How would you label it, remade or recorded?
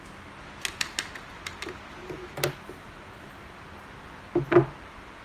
recorded